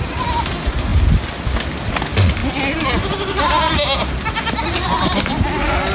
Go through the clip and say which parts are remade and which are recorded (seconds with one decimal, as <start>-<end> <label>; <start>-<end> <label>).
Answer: 0.0-5.9 recorded